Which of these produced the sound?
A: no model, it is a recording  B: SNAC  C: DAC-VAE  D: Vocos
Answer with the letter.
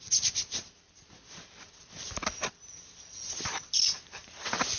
A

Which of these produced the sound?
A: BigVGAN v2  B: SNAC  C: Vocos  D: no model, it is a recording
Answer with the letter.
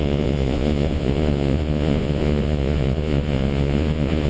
C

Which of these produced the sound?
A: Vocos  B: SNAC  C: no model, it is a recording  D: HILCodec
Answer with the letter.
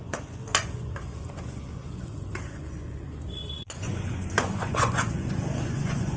A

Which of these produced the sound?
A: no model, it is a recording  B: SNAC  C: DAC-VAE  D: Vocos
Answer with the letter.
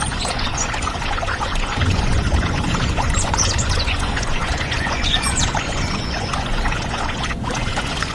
D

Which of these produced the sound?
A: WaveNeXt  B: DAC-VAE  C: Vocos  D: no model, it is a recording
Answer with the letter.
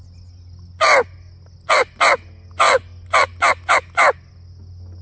D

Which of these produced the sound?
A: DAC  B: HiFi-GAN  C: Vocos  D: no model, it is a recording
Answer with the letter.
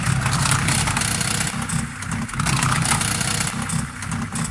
D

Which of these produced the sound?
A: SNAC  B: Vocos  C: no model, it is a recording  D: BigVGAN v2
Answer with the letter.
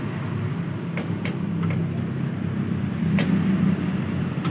C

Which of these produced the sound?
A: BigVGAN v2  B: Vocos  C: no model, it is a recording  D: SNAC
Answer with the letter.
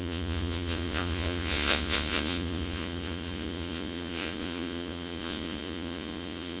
B